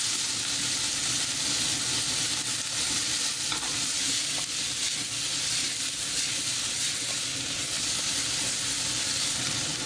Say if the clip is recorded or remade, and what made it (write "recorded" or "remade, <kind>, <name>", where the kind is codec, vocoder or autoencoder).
recorded